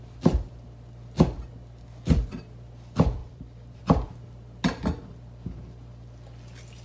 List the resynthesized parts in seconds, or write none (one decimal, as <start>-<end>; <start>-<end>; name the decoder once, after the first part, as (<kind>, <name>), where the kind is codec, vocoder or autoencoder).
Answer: 3.2-3.8 (vocoder, BigVGAN v2)